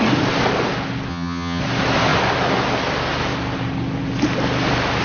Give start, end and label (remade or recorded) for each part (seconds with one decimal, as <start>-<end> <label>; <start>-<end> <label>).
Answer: 0.0-1.1 recorded; 1.1-1.6 remade; 1.6-5.0 recorded